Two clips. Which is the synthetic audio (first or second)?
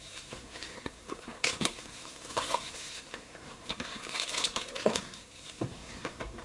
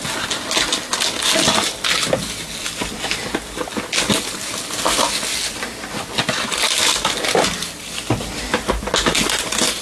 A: first